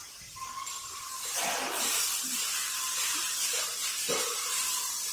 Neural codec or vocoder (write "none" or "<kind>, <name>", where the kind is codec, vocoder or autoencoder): none